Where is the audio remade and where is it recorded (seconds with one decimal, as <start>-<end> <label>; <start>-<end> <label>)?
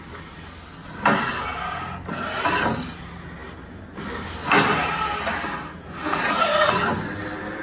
0.0-7.6 recorded